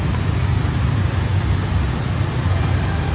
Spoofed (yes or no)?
no